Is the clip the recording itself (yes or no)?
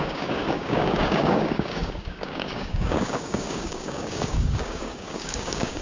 no